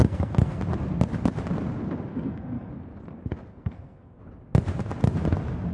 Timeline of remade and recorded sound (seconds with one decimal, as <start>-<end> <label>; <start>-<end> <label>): 0.0-0.6 remade; 0.6-2.1 recorded; 2.1-2.7 remade; 2.7-3.5 recorded; 3.5-4.2 remade; 4.2-5.7 recorded